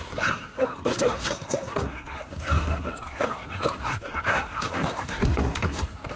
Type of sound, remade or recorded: remade